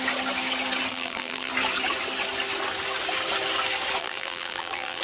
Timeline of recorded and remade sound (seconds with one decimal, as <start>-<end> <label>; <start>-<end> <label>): 0.0-0.9 recorded; 0.9-1.5 remade; 1.5-4.0 recorded; 4.0-5.0 remade